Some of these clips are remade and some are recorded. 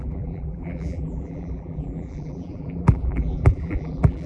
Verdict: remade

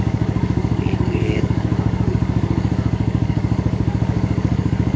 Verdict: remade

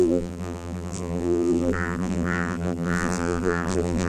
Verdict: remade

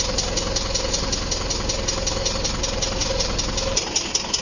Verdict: recorded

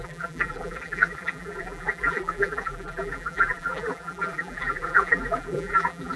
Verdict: remade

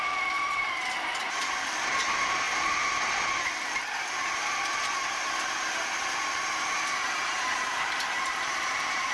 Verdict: recorded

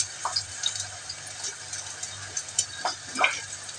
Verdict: recorded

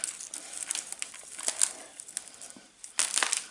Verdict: recorded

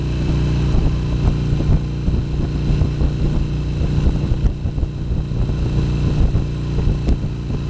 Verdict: recorded